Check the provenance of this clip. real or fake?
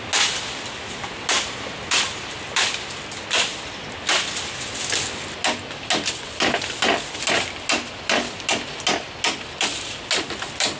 real